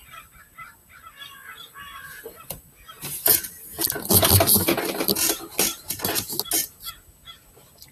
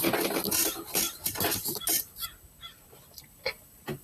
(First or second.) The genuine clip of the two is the first